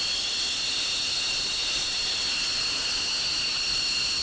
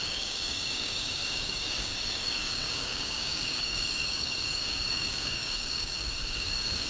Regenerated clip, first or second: second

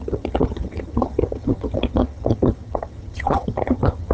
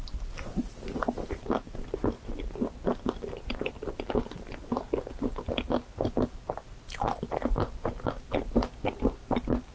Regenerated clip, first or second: first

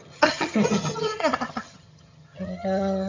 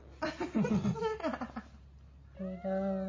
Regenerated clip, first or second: first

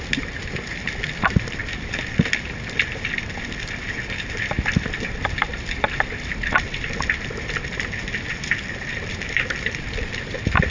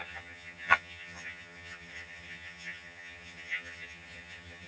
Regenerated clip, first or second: second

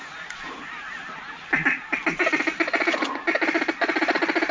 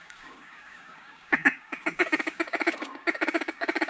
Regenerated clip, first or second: second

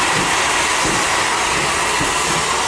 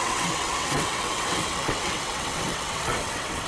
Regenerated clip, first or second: second